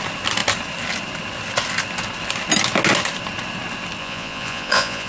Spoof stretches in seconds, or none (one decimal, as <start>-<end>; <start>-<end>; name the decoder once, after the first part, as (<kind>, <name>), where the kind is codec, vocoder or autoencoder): 4.0-5.1 (vocoder, Vocos)